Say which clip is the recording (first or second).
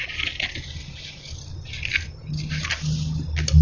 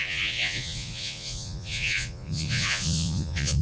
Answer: first